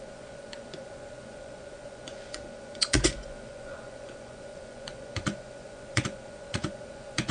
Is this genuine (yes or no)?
no